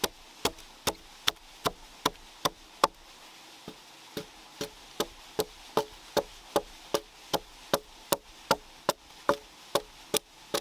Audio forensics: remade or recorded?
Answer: recorded